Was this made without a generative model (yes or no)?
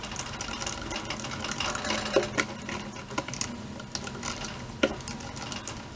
yes